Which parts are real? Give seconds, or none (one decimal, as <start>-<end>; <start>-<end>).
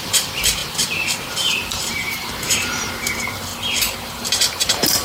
0.6-1.3; 3.5-4.4